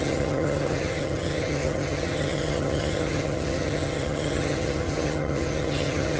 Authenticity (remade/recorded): remade